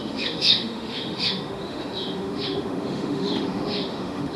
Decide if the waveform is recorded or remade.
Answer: remade